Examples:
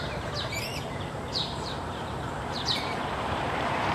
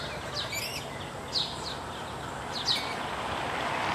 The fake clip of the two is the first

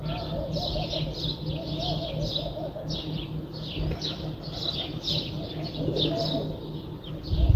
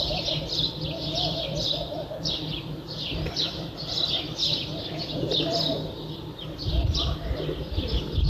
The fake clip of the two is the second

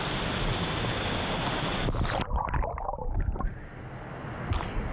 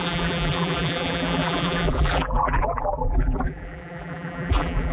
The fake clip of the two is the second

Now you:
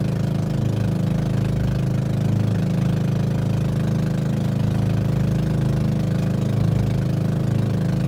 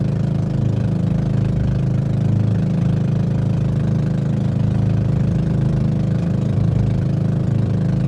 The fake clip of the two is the second